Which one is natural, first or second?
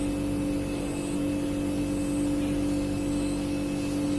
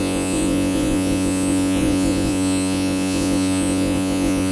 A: first